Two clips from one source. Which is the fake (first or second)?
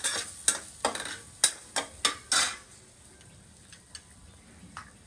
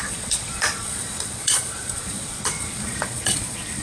second